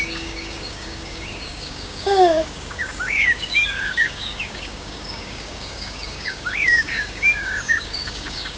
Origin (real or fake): fake